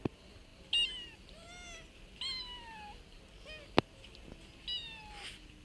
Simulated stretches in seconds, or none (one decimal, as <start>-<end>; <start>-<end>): none